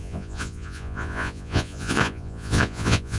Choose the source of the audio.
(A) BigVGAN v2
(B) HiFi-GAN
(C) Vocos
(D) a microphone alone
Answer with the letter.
C